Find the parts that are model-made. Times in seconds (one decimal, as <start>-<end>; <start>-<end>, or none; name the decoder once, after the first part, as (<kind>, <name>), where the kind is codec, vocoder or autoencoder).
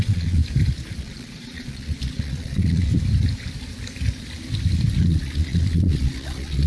0.0-0.4 (vocoder, Vocos); 1.0-2.9; 5.0-6.7